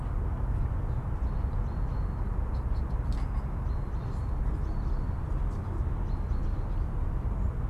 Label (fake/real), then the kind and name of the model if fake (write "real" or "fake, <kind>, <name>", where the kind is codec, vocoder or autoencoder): real